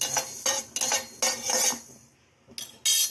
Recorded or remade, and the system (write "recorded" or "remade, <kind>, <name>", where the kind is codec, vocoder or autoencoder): recorded